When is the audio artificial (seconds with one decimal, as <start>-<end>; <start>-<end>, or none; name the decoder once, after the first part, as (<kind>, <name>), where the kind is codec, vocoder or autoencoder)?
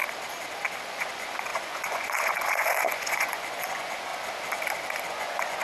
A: 0.8-4.1 (vocoder, Vocos); 5.1-5.6